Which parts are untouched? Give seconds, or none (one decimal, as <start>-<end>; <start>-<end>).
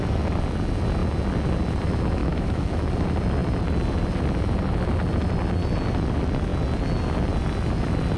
0.0-2.2; 2.9-8.2